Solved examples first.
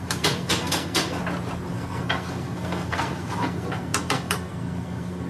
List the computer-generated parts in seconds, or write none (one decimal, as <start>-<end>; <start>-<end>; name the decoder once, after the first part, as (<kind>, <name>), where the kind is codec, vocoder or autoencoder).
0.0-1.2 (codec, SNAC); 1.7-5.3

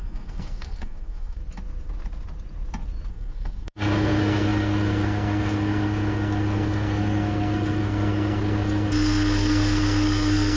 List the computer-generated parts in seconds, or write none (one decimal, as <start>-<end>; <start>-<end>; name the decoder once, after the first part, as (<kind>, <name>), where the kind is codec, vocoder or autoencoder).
0.0-1.4 (codec, SNAC); 3.1-10.6

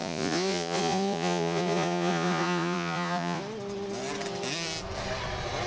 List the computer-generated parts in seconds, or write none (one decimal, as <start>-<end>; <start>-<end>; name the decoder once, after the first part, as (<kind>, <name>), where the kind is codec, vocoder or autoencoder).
0.0-3.4 (vocoder, Vocos)